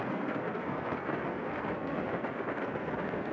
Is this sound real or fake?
fake